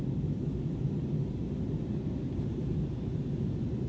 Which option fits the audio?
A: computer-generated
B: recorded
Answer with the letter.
B